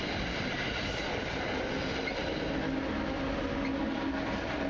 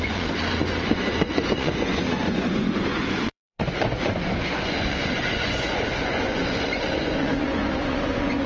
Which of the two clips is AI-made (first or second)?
second